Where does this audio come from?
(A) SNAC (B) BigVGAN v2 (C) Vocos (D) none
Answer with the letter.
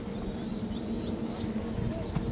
D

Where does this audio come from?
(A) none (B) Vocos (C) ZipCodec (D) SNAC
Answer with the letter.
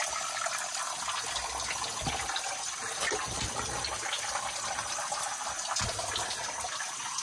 A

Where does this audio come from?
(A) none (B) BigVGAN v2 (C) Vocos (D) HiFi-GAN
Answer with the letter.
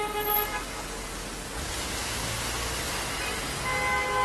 A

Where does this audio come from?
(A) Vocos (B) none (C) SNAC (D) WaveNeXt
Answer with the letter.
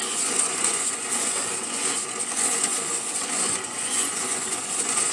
A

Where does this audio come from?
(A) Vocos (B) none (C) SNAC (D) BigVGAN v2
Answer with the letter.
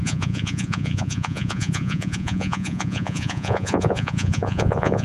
A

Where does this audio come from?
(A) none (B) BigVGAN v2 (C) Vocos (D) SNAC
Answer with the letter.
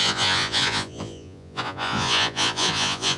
C